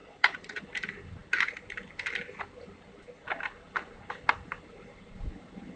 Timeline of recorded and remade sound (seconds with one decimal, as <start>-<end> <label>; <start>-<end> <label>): 0.0-0.6 remade; 0.6-5.8 recorded